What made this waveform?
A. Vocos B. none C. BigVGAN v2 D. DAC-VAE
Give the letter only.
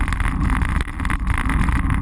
B